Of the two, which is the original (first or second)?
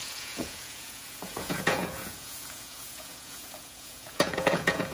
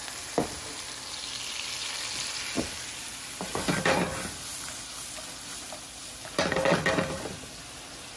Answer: second